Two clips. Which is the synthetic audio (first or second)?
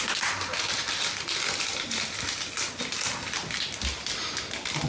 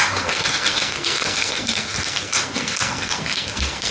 second